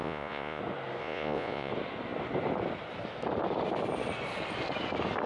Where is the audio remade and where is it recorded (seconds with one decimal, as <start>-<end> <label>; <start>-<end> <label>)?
0.0-0.6 remade; 0.6-1.0 recorded; 1.0-1.7 remade; 1.7-5.3 recorded